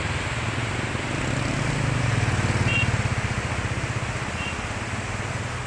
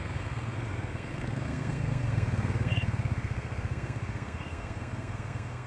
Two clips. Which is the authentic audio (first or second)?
first